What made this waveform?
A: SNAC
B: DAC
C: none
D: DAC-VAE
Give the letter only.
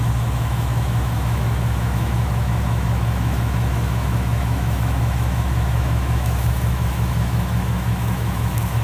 D